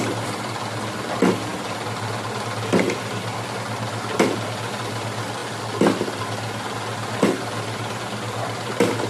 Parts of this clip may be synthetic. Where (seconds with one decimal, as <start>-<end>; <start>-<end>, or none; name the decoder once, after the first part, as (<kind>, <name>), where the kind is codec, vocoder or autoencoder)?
none